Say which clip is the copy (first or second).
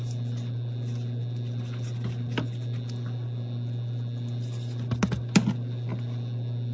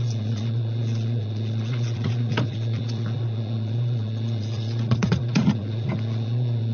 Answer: second